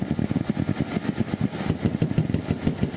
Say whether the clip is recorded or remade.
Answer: recorded